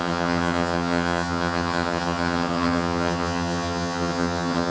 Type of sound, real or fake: fake